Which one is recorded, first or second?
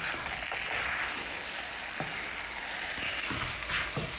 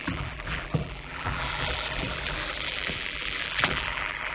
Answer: first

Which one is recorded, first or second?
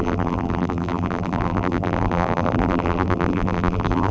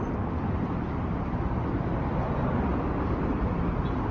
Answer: second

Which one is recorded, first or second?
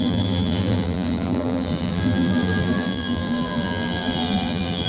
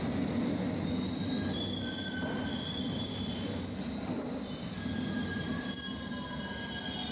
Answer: second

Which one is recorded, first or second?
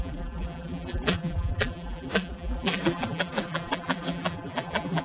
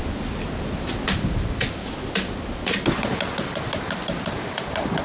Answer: second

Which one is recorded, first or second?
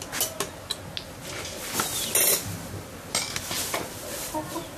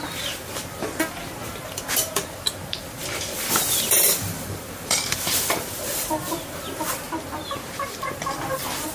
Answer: first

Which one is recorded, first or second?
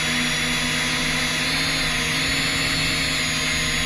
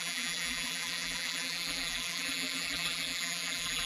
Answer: first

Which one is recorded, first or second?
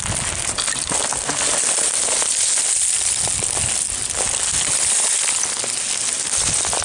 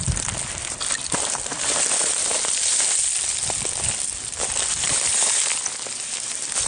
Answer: first